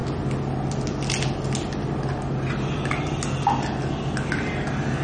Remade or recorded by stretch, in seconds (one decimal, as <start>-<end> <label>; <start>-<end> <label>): 0.0-5.0 recorded